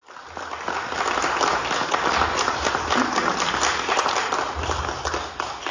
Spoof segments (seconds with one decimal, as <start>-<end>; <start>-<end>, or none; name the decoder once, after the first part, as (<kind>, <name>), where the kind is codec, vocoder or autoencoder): none

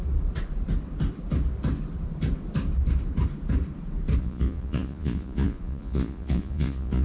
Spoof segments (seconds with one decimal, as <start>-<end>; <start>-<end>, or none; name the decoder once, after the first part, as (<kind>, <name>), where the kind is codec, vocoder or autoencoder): 4.2-7.0 (vocoder, Vocos)

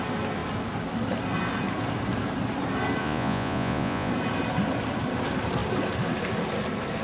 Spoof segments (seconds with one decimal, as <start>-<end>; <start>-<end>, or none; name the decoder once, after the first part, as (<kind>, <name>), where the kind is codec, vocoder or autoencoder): 3.0-4.1 (vocoder, Vocos)

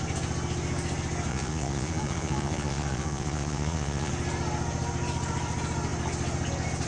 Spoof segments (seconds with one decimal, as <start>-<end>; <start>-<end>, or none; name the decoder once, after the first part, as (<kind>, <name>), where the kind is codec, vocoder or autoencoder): 1.3-4.1 (vocoder, Vocos)